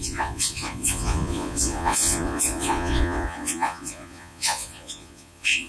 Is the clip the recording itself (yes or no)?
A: no